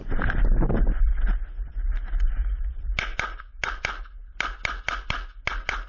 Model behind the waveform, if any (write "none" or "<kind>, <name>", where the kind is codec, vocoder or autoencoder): none